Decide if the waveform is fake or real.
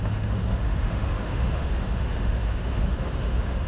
fake